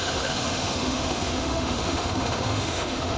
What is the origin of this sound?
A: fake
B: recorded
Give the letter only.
A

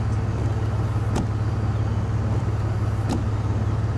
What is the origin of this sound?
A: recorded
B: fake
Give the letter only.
A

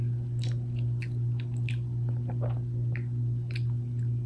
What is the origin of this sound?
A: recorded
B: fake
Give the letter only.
A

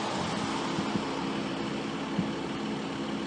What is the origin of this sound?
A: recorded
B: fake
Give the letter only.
A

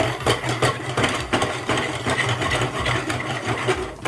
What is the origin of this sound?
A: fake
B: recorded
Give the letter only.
B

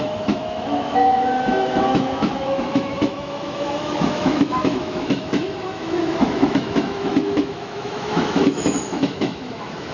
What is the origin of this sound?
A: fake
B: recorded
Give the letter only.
A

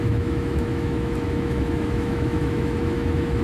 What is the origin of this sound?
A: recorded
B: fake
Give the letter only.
B